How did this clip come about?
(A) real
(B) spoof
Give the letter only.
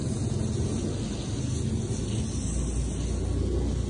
A